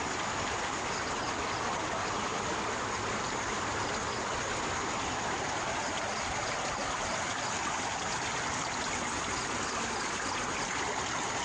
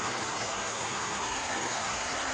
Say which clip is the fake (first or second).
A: second